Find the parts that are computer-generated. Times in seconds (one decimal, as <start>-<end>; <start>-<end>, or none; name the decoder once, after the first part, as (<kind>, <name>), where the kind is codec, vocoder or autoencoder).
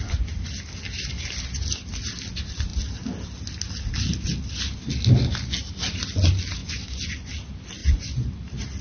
6.6-7.3 (vocoder, Vocos); 7.8-8.3